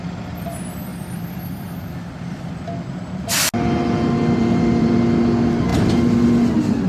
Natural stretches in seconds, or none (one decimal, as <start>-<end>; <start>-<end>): 0.0-0.9; 2.5-4.4; 4.9-6.9